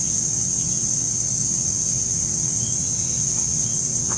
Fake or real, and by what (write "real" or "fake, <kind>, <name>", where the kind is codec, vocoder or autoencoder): fake, vocoder, WaveNeXt